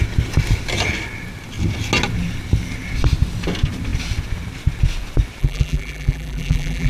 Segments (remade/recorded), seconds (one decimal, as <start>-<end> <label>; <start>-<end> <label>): 0.0-5.4 recorded; 5.4-6.9 remade